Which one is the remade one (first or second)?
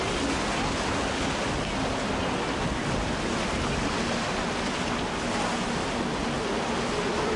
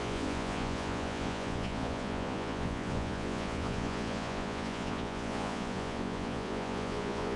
second